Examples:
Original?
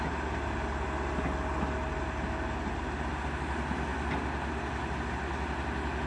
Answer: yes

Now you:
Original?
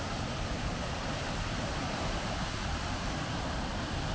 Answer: no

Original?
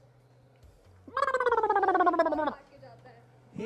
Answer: yes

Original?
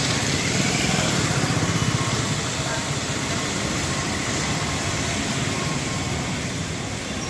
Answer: no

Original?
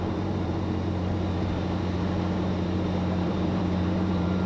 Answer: no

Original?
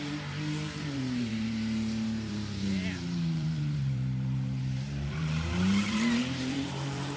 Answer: no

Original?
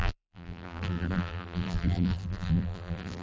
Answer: no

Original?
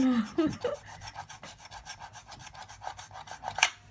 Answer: no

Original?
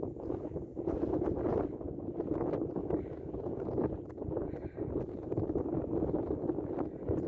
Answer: yes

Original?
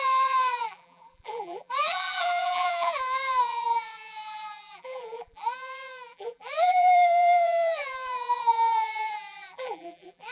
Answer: no